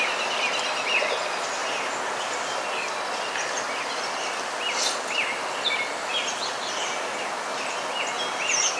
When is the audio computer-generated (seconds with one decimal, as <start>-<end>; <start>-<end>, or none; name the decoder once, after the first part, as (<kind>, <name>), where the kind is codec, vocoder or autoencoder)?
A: none